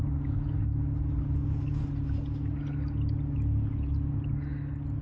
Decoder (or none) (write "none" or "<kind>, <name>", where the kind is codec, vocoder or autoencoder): none